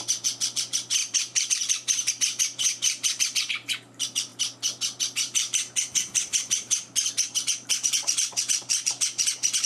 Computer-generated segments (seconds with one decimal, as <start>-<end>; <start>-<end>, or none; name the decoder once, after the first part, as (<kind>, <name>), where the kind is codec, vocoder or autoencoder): 0.0-4.3 (vocoder, BigVGAN v2); 5.0-9.7